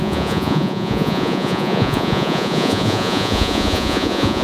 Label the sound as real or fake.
fake